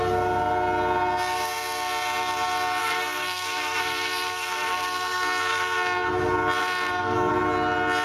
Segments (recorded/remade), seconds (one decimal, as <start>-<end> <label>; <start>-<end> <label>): 0.0-2.8 recorded; 2.8-6.1 remade; 6.1-6.6 recorded; 6.6-7.3 remade; 7.3-8.0 recorded